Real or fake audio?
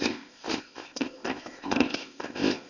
fake